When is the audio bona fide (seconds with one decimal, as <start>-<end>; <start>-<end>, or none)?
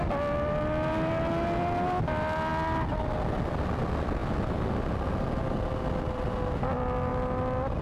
0.0-7.8